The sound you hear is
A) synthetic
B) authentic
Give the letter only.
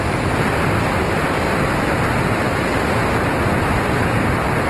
B